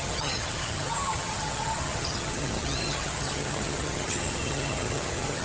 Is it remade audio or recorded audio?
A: remade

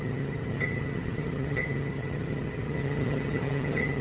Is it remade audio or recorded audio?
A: remade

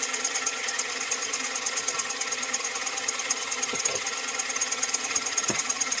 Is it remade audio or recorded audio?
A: remade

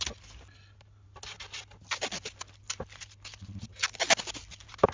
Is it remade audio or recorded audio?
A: recorded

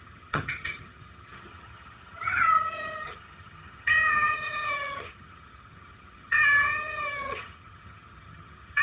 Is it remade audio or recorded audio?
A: remade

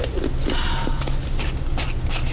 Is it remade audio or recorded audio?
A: recorded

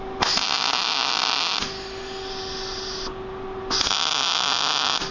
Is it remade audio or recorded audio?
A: recorded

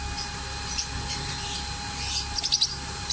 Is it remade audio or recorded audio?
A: recorded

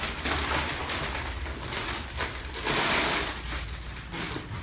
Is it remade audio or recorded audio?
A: recorded